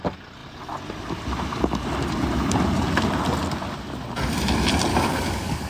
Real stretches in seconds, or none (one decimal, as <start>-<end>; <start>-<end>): 0.0-4.9